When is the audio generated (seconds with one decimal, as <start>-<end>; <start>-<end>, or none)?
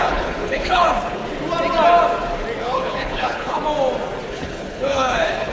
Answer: 0.0-1.2; 2.6-3.6; 4.3-5.5